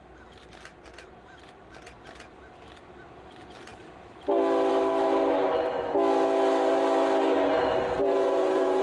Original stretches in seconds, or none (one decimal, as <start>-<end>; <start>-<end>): 0.0-8.0